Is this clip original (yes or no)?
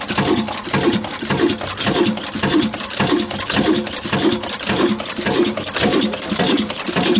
yes